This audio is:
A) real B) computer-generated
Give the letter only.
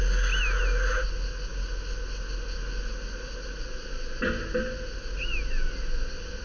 A